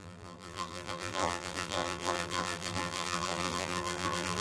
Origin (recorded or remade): remade